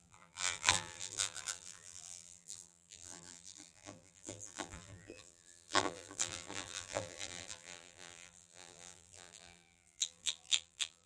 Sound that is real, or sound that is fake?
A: fake